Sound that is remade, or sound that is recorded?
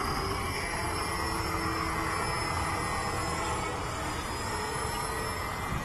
recorded